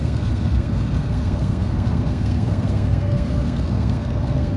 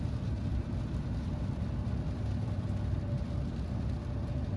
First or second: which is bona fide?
second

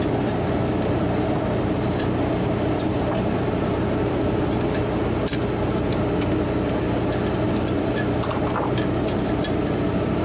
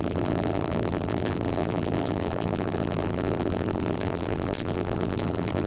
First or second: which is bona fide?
first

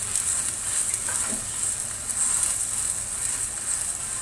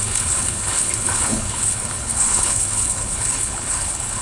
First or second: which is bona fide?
first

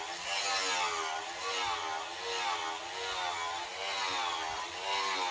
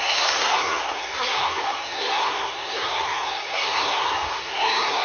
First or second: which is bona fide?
first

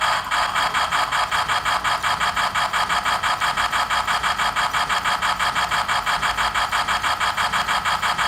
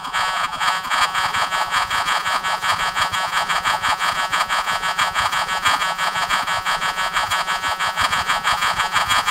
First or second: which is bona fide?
first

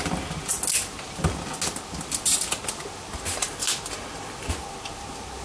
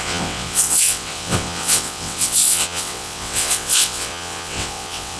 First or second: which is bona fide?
first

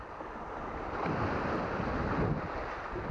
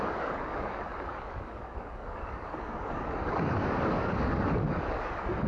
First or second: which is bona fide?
first